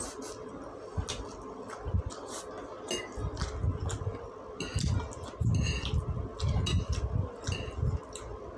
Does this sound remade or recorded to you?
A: recorded